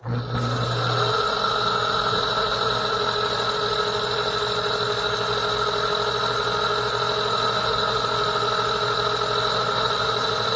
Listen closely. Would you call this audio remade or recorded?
recorded